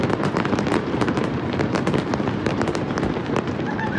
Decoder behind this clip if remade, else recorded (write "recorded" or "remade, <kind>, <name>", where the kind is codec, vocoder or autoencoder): remade, vocoder, BigVGAN v2